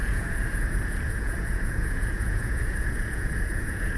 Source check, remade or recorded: remade